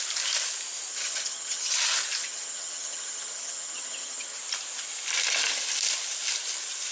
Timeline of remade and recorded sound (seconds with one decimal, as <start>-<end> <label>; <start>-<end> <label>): 0.0-0.9 recorded; 0.9-1.7 remade; 1.7-2.2 recorded; 2.2-4.4 remade; 4.4-6.9 recorded